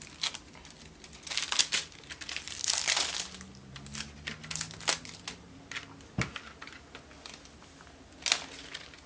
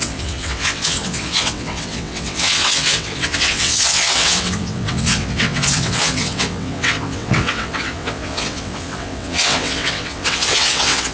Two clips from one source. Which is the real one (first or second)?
first